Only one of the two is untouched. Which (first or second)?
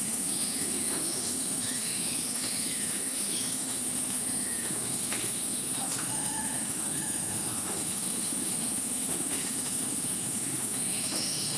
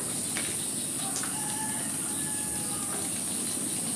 second